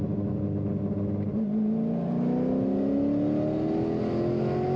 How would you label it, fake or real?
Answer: real